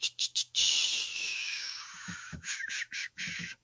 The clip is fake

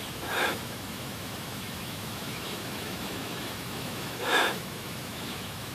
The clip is fake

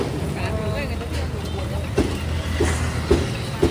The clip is real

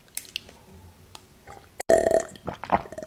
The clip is real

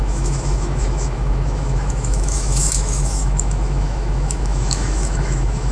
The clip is fake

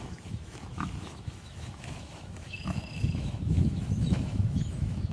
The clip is fake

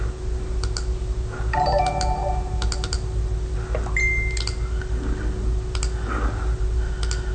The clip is real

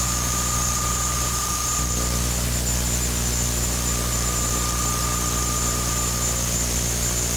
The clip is real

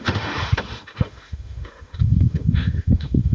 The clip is fake